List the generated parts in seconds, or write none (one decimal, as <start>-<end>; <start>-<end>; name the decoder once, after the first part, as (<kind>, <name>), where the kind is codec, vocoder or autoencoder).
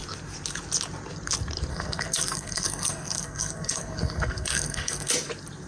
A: 1.7-5.1 (codec, SNAC)